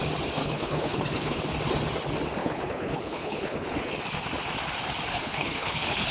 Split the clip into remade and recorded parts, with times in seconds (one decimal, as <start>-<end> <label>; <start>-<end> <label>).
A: 0.0-0.4 recorded; 0.4-1.4 remade; 1.4-2.4 recorded; 2.4-3.9 remade; 3.9-5.1 recorded; 5.1-6.1 remade